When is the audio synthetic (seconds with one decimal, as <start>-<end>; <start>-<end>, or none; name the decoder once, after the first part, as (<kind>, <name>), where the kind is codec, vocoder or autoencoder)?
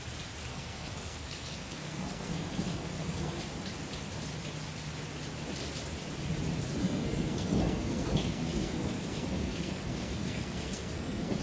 0.5-3.4 (codec, SNAC); 6.8-11.4